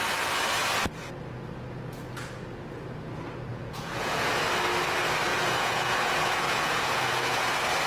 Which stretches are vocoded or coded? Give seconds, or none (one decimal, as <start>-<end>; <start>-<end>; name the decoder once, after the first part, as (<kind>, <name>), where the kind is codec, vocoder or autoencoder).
3.5-4.3 (vocoder, Vocos); 5.3-7.5